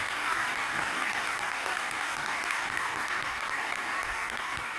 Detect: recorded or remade remade